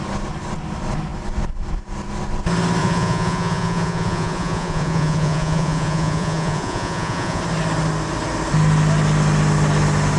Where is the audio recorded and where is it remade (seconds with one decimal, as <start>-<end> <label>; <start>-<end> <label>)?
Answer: 0.0-2.8 recorded; 2.8-7.4 remade; 7.4-10.2 recorded